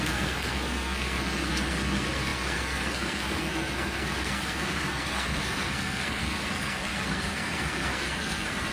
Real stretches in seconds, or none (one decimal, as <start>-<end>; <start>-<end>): none